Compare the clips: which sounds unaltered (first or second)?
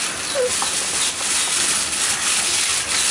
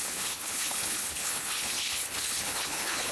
first